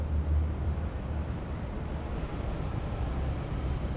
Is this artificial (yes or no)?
yes